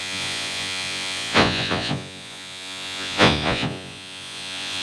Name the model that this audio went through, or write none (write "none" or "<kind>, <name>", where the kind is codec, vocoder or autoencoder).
vocoder, Vocos